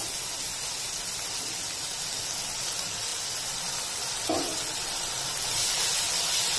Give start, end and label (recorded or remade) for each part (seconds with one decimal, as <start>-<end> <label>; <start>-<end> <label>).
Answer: 0.0-6.6 recorded